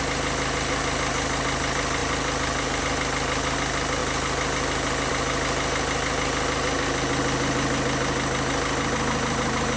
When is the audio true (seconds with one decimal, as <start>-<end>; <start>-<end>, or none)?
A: 0.0-9.8